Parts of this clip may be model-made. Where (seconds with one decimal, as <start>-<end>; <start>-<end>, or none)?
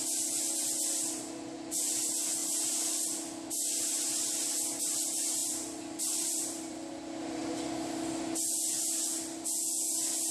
5.4-6.9